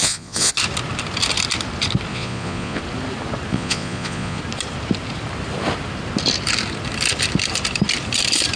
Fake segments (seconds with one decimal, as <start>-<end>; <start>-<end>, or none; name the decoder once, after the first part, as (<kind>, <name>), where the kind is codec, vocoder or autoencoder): 0.0-0.5 (vocoder, Vocos); 2.1-2.8; 3.5-4.4